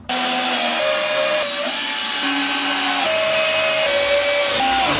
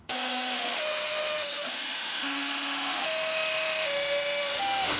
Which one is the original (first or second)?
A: first